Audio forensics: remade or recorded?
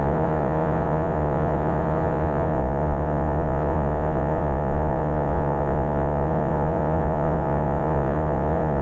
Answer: remade